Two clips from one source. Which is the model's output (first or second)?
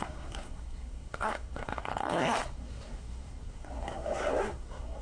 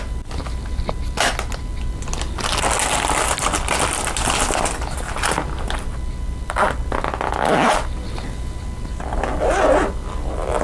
first